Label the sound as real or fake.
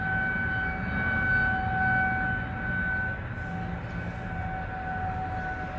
real